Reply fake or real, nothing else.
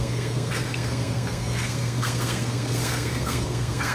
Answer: fake